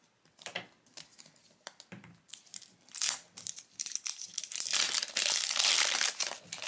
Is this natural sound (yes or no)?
yes